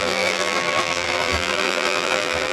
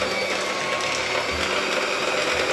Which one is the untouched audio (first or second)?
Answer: second